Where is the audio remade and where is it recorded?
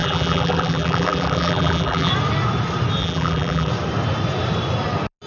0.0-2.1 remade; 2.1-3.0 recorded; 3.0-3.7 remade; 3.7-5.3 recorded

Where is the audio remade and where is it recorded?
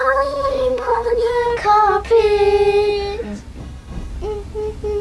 0.0-1.3 remade; 1.3-3.6 recorded; 3.6-4.1 remade; 4.1-5.0 recorded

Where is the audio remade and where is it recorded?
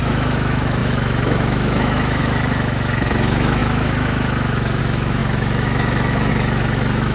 0.0-7.1 remade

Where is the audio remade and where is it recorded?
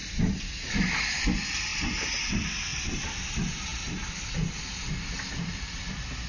0.0-6.3 recorded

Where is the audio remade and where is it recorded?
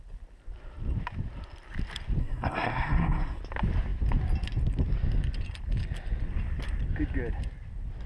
0.0-2.2 recorded; 2.2-3.4 remade; 3.4-8.1 recorded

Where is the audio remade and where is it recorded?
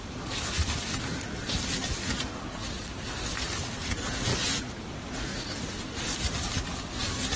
0.0-2.6 remade; 2.6-3.8 recorded; 3.8-4.3 remade; 4.3-4.8 recorded; 4.8-5.3 remade; 5.3-6.5 recorded; 6.5-7.4 remade